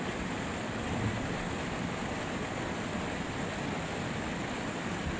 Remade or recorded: recorded